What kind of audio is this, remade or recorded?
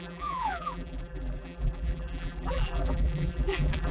remade